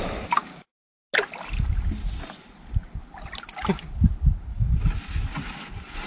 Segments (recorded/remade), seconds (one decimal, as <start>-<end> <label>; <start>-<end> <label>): 0.0-6.1 recorded